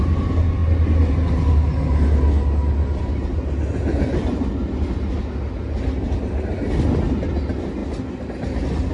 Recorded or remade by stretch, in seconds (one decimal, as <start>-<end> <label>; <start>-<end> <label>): 0.0-8.9 recorded